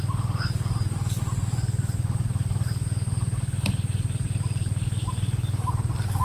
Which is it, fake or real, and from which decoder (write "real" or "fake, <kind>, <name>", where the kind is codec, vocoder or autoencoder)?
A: real